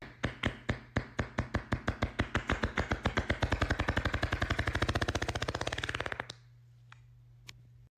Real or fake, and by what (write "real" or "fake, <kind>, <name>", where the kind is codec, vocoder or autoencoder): real